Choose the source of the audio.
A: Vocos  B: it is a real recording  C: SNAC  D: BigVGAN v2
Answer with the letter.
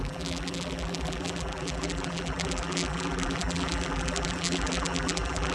D